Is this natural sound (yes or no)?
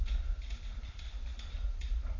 no